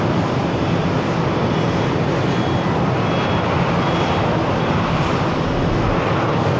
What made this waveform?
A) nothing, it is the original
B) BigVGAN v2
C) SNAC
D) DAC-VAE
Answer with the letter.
A